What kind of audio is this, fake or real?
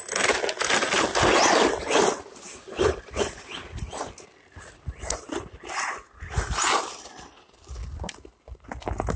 real